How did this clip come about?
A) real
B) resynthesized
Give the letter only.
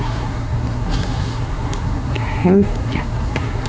B